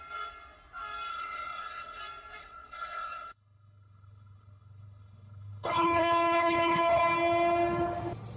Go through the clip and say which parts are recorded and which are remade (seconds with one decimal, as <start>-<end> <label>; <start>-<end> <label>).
0.0-1.1 recorded; 1.1-2.0 remade; 2.0-2.4 recorded; 2.4-7.0 remade; 7.0-8.4 recorded